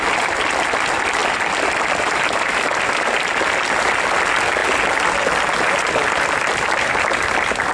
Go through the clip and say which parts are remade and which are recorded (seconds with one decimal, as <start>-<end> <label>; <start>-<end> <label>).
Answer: 0.0-1.2 recorded; 1.2-4.1 remade; 4.1-7.7 recorded